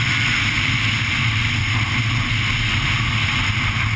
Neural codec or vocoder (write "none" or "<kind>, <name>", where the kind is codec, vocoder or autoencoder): none